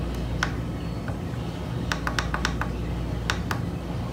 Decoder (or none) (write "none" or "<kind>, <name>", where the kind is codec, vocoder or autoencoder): none